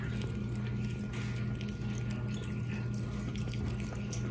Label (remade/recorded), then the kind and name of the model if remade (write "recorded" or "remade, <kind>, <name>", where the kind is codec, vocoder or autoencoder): recorded